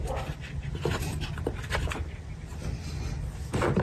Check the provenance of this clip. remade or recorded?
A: recorded